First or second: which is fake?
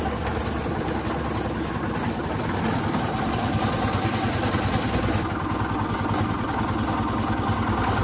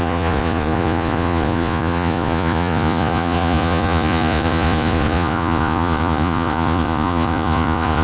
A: second